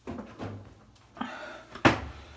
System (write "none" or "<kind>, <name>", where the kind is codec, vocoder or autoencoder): none